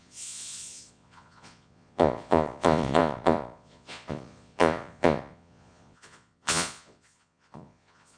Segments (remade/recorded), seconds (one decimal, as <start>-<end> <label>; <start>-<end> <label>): 0.0-8.2 remade